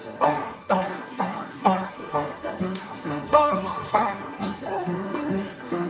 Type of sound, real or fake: fake